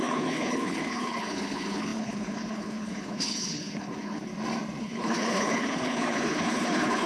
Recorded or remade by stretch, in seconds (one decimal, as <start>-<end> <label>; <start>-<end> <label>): 0.0-4.3 remade; 4.3-4.8 recorded; 4.8-7.1 remade